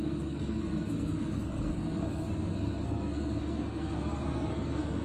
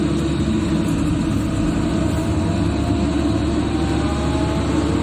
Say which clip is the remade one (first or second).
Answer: first